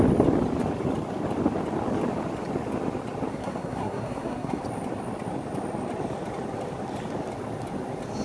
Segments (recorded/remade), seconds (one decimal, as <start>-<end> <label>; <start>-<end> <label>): 0.0-3.3 recorded; 3.3-4.6 remade; 4.6-8.2 recorded